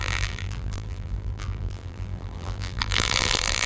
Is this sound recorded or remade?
remade